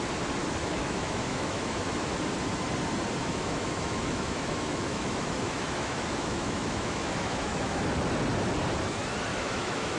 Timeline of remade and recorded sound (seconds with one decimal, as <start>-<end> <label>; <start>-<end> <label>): 0.0-0.6 recorded; 0.6-2.1 remade; 2.1-3.2 recorded; 3.2-7.9 remade; 7.9-9.3 recorded; 9.3-10.0 remade